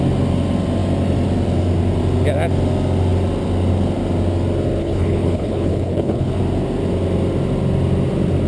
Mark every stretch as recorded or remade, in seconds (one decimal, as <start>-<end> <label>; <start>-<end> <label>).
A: 0.0-4.8 recorded; 4.8-6.4 remade; 6.4-8.5 recorded

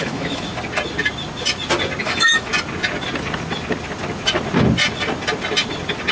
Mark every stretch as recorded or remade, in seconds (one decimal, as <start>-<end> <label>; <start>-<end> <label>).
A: 0.0-0.5 remade; 0.5-2.0 recorded; 2.0-2.5 remade; 2.5-6.1 recorded

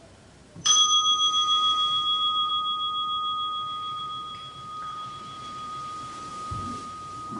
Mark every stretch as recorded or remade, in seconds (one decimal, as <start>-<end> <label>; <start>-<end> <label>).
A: 0.0-2.5 remade; 2.5-4.0 recorded; 4.0-7.4 remade

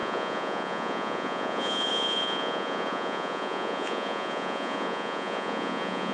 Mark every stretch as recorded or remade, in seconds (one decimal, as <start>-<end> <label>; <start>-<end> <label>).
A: 0.0-6.1 remade

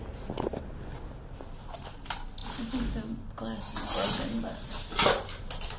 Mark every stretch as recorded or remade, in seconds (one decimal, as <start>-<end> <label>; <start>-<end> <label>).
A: 0.0-5.8 recorded

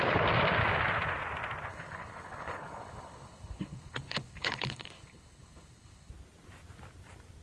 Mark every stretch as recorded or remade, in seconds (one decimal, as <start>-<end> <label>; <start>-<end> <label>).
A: 0.0-1.7 recorded; 1.7-6.1 remade; 6.1-7.4 recorded